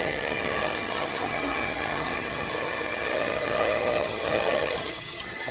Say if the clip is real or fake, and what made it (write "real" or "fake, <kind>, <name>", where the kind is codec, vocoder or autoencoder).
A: fake, vocoder, HiFi-GAN